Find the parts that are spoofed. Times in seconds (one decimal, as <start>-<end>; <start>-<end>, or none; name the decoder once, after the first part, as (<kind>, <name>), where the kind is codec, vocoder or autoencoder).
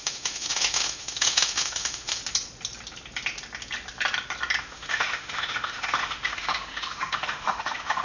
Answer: 0.0-2.2 (autoencoder, DAC-VAE); 4.6-8.0